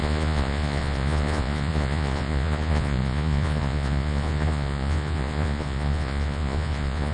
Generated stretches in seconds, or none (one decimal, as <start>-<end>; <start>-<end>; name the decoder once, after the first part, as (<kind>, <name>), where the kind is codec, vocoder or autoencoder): 0.0-7.1 (vocoder, Vocos)